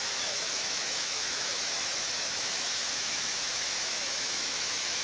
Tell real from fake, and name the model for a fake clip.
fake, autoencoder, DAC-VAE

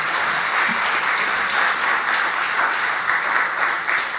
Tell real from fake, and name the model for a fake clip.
real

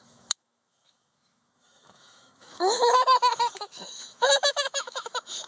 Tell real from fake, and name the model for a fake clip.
fake, autoencoder, DAC-VAE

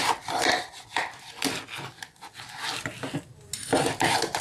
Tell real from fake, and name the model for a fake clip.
real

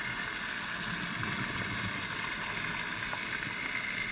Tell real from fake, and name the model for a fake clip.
real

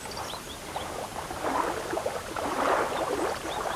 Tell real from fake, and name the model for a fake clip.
real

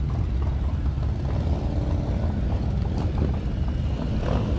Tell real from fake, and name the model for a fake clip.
real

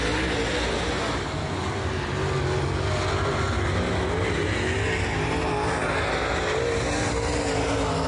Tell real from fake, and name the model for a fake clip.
real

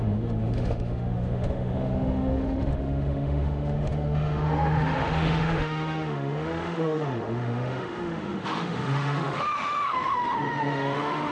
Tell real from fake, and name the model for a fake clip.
fake, autoencoder, DAC-VAE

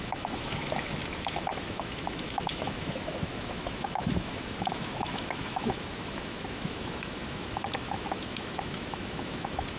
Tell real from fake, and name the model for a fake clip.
fake, autoencoder, DAC-VAE